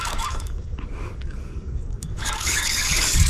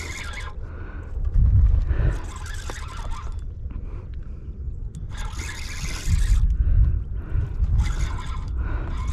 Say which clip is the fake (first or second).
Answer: first